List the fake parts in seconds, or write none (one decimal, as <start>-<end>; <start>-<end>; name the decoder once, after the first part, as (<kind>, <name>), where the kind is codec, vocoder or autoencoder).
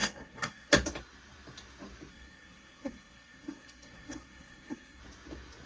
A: 0.0-0.7 (codec, SNAC); 2.1-5.0